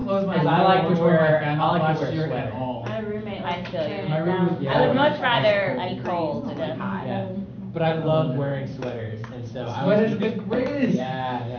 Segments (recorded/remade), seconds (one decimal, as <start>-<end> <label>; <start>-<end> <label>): 0.0-4.1 recorded; 4.1-5.5 remade; 5.5-6.7 recorded; 6.7-11.6 remade